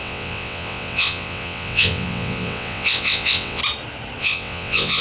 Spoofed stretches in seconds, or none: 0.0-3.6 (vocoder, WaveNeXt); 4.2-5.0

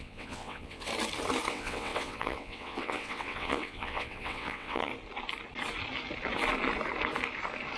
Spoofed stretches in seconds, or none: 0.0-0.9 (vocoder, WaveNeXt); 1.5-4.9

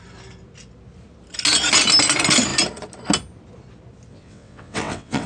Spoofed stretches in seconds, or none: 4.1-5.3 (vocoder, WaveNeXt)

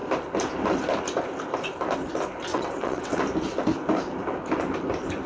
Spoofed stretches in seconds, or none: 2.5-3.2 (vocoder, WaveNeXt)

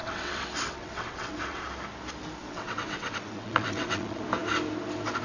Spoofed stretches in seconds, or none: 0.0-1.6 (vocoder, WaveNeXt); 2.4-4.2

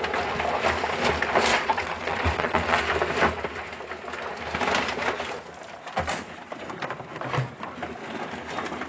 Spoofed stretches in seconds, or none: 1.5-2.8 (vocoder, WaveNeXt)

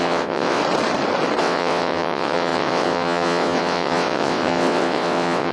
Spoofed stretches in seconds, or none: 0.0-0.6 (vocoder, WaveNeXt); 1.4-5.5

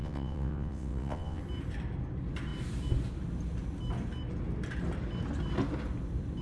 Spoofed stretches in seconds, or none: 0.0-1.4 (vocoder, WaveNeXt)